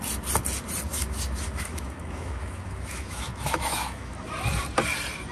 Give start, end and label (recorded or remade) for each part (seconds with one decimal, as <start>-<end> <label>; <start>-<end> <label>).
0.0-0.9 recorded; 0.9-4.1 remade; 4.1-5.3 recorded